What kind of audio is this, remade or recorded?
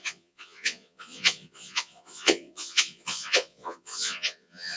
remade